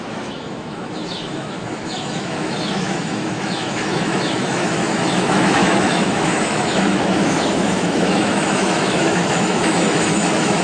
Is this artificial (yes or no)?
yes